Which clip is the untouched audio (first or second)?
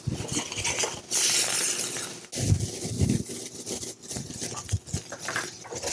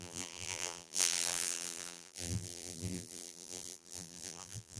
first